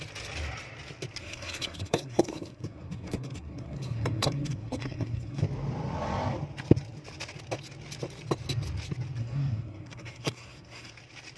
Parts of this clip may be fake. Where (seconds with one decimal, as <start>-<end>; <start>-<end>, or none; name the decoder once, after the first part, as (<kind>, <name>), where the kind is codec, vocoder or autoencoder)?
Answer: 1.2-5.4 (codec, SNAC); 9.2-10.9